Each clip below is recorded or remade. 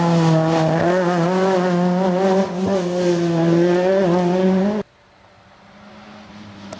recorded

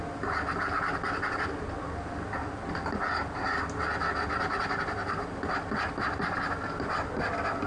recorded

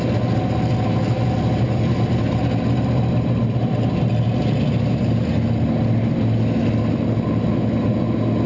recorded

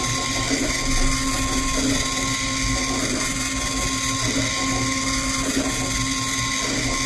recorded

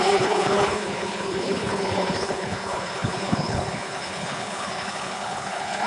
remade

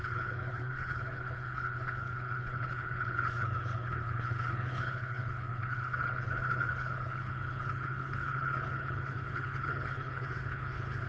remade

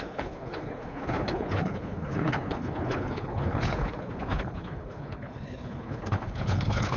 remade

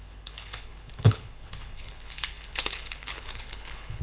remade